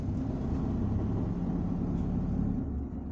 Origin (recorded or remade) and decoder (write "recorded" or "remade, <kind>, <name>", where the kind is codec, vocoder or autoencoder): recorded